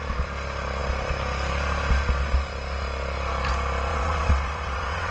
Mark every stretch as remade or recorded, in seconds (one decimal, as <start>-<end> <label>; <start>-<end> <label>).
0.0-3.9 recorded; 3.9-5.1 remade